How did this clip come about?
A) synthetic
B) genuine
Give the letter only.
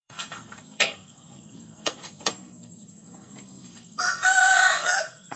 A